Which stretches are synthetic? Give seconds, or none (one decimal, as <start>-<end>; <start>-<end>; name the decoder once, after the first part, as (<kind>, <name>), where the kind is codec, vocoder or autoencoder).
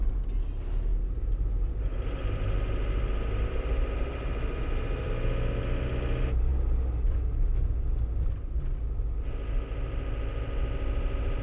0.9-5.1 (vocoder, BigVGAN v2)